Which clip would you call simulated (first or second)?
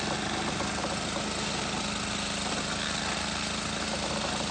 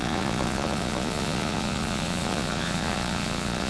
second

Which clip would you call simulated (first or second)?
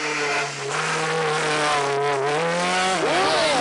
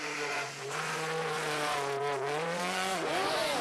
second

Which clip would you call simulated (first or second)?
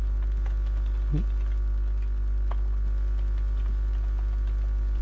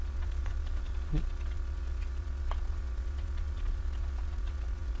second